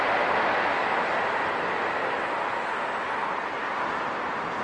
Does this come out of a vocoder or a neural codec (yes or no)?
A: no